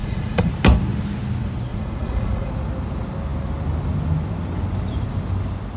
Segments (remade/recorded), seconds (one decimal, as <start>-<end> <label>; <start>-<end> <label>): 0.0-0.5 remade; 0.5-1.7 recorded; 1.7-2.5 remade; 2.5-5.8 recorded